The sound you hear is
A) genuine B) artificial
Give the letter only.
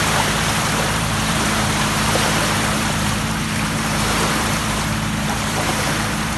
B